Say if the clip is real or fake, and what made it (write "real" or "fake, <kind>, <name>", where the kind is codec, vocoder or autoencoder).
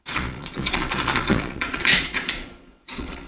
fake, vocoder, Vocos